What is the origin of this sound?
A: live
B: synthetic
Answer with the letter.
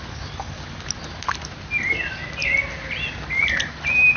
A